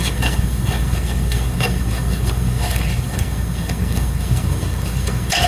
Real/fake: fake